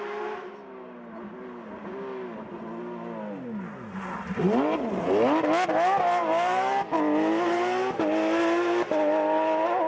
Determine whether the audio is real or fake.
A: real